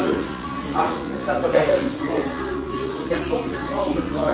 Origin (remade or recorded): remade